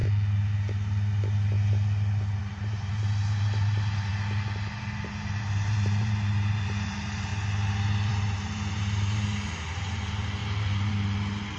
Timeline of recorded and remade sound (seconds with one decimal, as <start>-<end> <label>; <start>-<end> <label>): 0.0-2.4 recorded; 2.4-4.1 remade; 4.1-5.3 recorded; 5.3-7.3 remade; 7.3-8.1 recorded; 8.1-11.6 remade